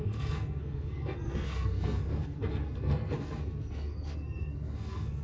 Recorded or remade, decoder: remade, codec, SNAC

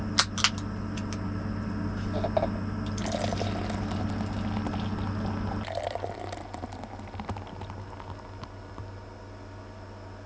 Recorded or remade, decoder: recorded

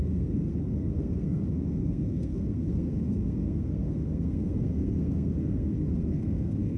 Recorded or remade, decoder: remade, codec, SNAC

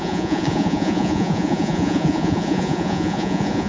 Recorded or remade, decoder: remade, vocoder, Vocos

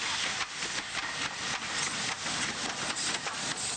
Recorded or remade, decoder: recorded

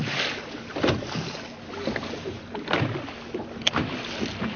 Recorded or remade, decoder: recorded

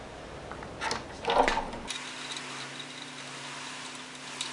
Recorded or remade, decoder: recorded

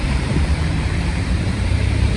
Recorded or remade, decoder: remade, vocoder, BigVGAN v2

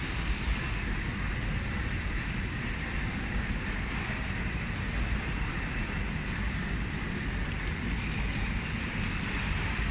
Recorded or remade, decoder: recorded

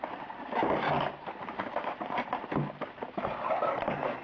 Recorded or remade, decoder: recorded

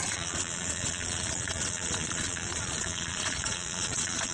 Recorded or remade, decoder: remade, vocoder, Vocos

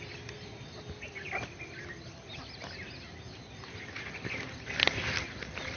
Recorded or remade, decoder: recorded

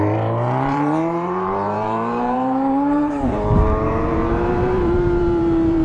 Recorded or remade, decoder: remade, vocoder, BigVGAN v2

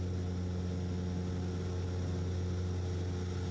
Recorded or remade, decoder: recorded